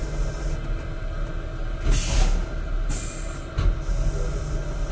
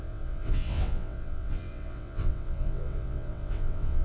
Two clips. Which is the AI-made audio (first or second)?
second